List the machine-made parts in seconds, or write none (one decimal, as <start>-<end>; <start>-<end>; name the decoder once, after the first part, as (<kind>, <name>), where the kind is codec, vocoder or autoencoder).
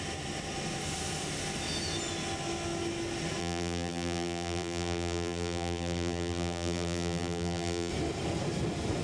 3.4-7.9 (vocoder, BigVGAN v2)